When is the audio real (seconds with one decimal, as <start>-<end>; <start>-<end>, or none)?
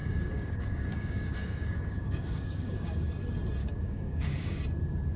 3.1-3.6; 4.6-5.2